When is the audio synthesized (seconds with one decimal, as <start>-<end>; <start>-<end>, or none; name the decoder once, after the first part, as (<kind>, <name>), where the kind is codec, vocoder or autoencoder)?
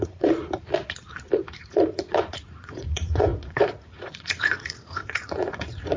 0.0-0.4 (vocoder, Vocos); 1.7-6.0